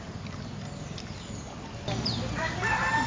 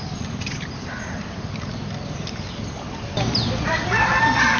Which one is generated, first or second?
second